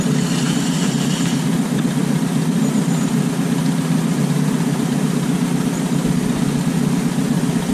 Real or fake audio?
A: real